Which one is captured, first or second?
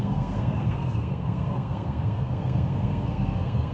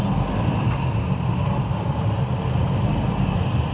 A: second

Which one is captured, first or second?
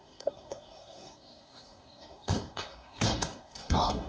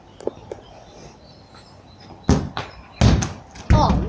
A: second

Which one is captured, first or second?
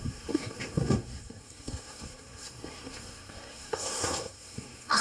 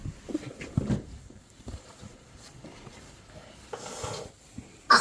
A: second